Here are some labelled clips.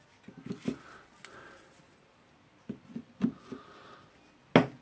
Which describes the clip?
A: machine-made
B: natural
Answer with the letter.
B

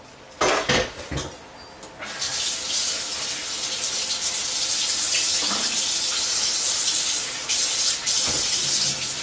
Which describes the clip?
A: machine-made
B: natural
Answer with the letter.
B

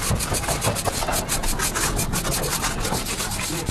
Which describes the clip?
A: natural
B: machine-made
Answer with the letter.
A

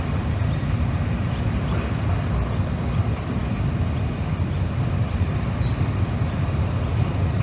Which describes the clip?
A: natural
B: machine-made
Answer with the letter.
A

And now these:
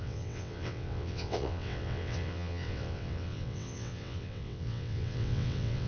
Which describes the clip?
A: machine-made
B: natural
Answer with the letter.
A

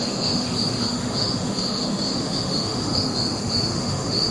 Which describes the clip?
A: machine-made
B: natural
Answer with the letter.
A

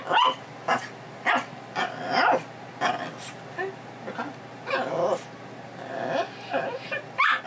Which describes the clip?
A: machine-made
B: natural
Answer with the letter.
B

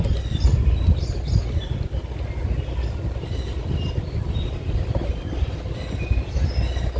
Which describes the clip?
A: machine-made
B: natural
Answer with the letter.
B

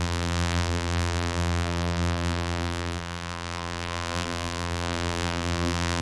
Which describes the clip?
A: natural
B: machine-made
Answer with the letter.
B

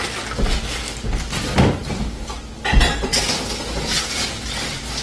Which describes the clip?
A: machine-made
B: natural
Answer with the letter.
B